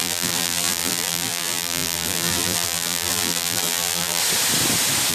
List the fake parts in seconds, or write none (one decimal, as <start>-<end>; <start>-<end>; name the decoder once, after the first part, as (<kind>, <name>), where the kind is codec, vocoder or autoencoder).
0.0-4.2 (vocoder, BigVGAN v2)